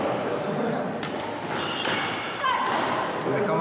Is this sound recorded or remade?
recorded